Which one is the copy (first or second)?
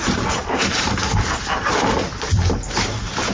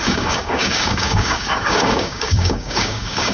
second